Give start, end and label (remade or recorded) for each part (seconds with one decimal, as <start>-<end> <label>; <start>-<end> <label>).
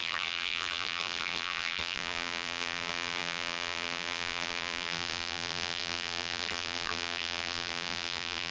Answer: 0.0-8.5 remade